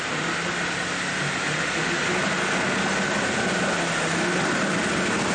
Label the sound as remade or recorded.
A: recorded